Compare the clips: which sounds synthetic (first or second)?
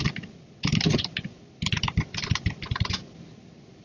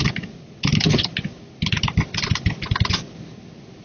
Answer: first